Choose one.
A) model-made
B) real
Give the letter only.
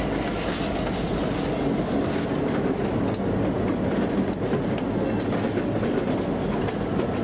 B